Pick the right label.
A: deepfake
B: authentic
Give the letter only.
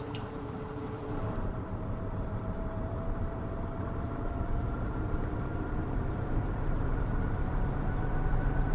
A